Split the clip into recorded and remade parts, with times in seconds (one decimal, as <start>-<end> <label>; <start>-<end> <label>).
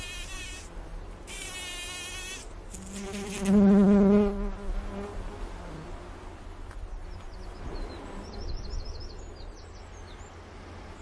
0.0-11.0 recorded